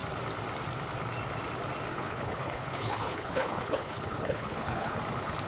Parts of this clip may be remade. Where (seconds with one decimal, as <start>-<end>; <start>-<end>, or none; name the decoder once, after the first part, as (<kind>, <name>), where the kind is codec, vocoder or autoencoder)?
1.9-5.0 (codec, HILCodec)